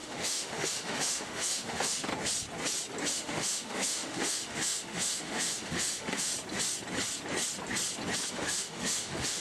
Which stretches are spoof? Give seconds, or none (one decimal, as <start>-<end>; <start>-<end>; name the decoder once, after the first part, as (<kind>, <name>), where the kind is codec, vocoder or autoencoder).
0.0-2.1 (autoencoder, DAC-VAE); 3.1-6.3; 8.3-9.4